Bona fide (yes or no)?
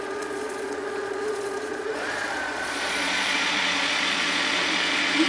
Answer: no